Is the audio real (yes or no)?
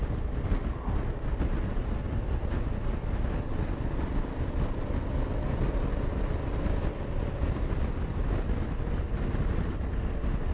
yes